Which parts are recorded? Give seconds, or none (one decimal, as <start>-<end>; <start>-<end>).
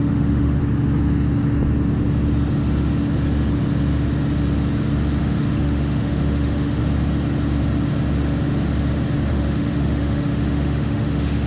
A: 0.6-5.2; 6.8-9.3